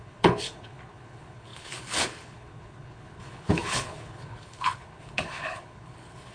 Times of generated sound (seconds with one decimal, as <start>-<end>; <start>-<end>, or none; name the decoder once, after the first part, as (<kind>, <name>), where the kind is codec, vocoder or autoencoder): 0.0-6.3 (codec, HILCodec)